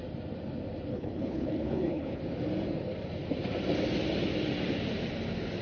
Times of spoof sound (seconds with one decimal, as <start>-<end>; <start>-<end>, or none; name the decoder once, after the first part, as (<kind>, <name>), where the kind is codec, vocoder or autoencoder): 0.9-2.2 (codec, HILCodec)